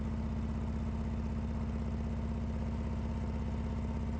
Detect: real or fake real